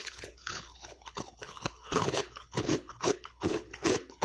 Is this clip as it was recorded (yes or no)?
no